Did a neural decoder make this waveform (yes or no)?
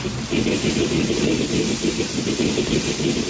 no